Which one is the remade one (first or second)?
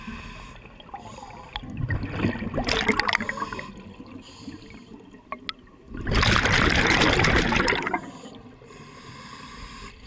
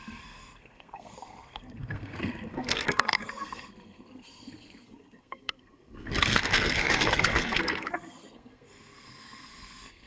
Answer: second